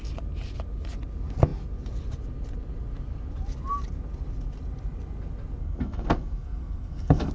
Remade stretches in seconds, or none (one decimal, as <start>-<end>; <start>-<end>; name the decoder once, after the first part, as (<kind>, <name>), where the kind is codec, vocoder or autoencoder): 5.6-7.3 (codec, SNAC)